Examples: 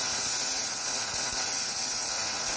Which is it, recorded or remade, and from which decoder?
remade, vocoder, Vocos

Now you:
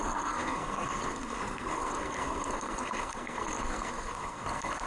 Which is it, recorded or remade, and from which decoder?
remade, codec, SNAC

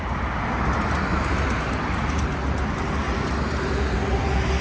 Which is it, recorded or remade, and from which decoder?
recorded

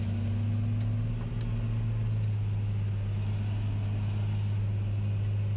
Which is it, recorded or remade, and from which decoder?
recorded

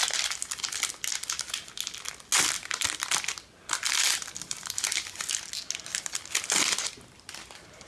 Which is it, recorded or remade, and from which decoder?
recorded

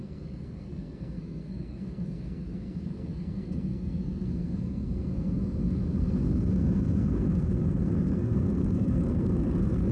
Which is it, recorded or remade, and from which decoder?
remade, codec, SNAC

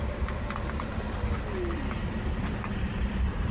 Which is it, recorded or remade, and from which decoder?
remade, vocoder, BigVGAN v2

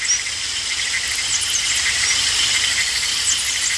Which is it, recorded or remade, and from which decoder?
recorded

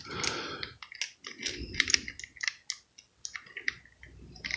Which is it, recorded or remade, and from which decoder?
recorded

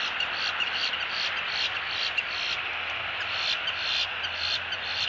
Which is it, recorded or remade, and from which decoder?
remade, vocoder, BigVGAN v2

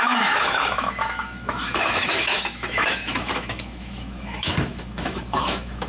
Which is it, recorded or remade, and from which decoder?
remade, autoencoder, DAC-VAE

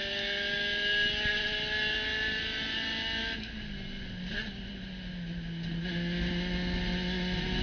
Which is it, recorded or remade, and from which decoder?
recorded